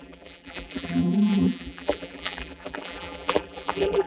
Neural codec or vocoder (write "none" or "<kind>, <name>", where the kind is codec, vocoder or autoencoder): vocoder, BigVGAN v2